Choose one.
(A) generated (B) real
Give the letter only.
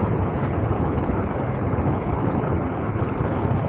A